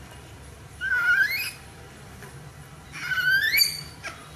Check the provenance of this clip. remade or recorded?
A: recorded